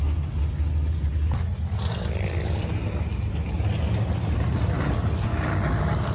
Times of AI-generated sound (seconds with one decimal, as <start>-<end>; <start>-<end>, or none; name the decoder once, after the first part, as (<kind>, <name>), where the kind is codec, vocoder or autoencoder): none